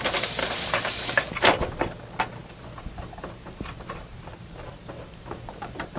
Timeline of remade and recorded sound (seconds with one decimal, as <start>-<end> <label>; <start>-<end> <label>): 0.0-0.4 remade; 0.4-2.5 recorded; 2.5-6.0 remade

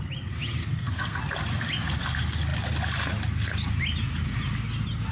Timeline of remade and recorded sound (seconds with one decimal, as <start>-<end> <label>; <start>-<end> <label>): 0.0-0.6 recorded; 0.6-1.2 remade; 1.2-5.1 recorded

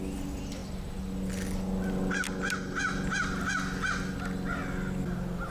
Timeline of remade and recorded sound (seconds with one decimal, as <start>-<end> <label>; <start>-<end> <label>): 0.0-5.5 recorded